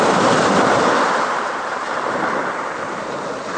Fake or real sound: fake